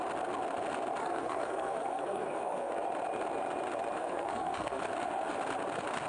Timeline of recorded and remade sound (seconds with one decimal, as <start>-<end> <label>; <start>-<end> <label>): 0.0-1.0 recorded; 1.0-2.7 remade; 2.7-4.0 recorded; 4.0-4.8 remade; 4.8-6.1 recorded